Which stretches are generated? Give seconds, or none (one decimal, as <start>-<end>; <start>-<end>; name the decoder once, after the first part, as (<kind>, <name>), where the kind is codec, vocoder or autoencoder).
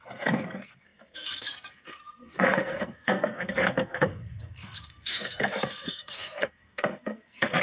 0.0-7.6 (codec, SNAC)